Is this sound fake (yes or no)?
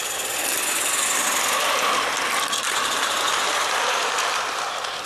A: no